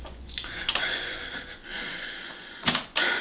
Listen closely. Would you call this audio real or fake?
fake